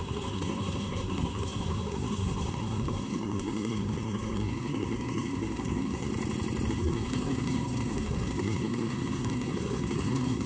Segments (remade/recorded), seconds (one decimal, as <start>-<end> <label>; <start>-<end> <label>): 0.0-6.1 remade; 6.1-6.7 recorded; 6.7-10.5 remade